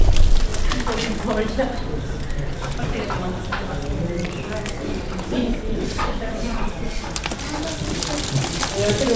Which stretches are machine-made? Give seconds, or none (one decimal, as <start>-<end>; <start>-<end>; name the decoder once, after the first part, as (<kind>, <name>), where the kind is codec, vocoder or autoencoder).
5.4-7.0 (vocoder, WaveNeXt)